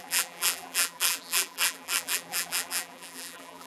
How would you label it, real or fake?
fake